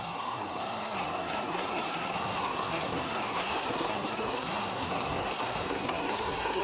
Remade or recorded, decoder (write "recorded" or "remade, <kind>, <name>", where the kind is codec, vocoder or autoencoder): remade, codec, SNAC